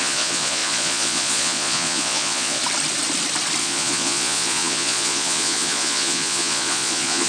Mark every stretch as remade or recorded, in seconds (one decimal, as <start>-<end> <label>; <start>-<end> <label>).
0.0-2.6 remade; 2.6-3.6 recorded; 3.6-7.3 remade